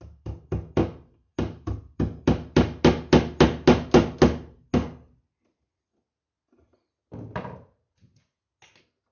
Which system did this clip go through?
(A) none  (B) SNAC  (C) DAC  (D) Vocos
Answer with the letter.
A